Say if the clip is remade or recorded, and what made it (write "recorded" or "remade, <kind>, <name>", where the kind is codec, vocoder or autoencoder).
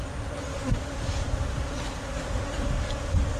recorded